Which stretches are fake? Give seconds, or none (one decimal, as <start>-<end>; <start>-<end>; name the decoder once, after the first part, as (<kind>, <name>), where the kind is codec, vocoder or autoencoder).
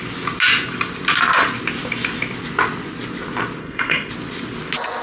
3.6-4.1 (codec, SNAC)